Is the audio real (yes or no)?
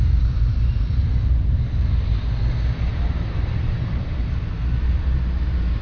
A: no